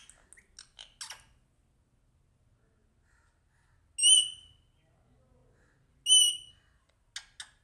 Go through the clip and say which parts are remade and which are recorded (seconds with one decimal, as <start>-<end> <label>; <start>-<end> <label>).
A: 0.0-7.6 recorded